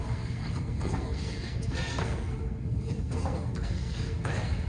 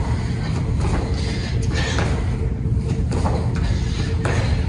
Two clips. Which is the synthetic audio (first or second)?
first